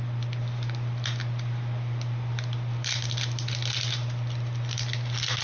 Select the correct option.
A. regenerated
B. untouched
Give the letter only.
B